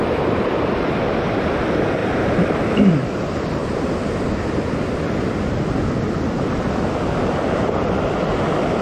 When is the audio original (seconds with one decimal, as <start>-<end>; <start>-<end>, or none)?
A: 0.0-2.0; 2.9-8.8